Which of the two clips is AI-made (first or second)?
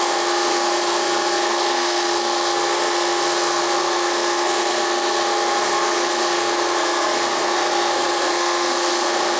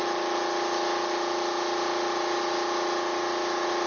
first